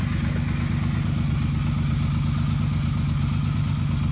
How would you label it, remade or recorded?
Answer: recorded